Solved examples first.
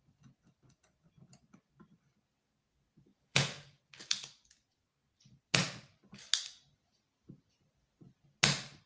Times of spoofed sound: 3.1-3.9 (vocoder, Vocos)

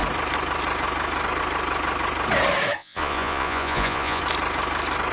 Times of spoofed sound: 2.8-4.2 (vocoder, Vocos)